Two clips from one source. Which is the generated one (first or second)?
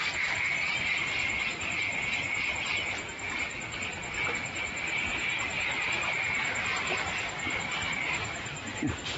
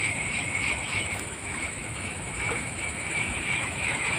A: second